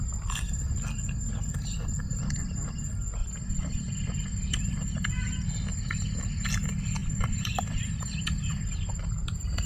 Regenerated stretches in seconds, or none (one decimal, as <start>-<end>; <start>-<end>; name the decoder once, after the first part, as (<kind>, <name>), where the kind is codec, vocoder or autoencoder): 3.2-3.9 (vocoder, BigVGAN v2); 7.0-8.2

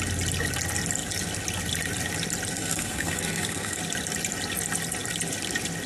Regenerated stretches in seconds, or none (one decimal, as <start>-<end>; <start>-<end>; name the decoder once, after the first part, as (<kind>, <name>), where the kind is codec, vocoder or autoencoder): 2.5-3.8 (codec, SNAC)